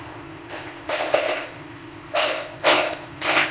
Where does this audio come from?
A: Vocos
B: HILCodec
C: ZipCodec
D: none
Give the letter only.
C